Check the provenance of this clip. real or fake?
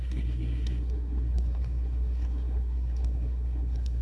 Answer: fake